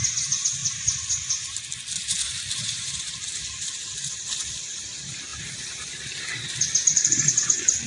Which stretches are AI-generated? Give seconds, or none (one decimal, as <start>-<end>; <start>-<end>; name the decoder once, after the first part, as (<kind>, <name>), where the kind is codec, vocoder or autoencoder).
0.0-0.6 (vocoder, BigVGAN v2); 3.1-7.9